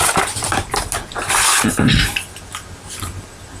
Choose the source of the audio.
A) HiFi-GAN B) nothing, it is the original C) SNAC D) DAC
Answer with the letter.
B